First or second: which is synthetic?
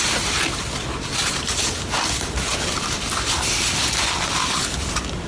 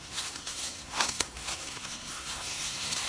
second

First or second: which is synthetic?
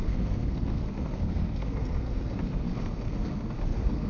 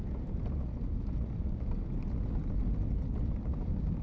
first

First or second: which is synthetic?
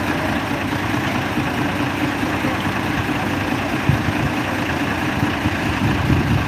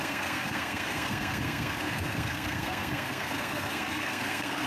second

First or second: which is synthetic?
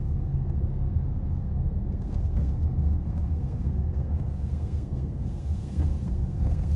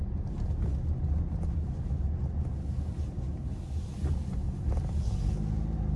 first